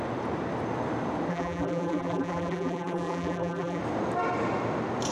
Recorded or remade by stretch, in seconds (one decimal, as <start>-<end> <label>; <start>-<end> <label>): 0.0-1.3 recorded; 1.3-3.8 remade; 3.8-5.1 recorded